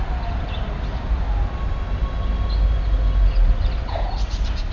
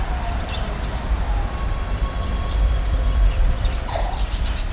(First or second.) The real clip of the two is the first